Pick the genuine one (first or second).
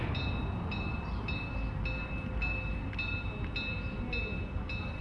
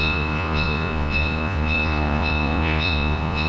first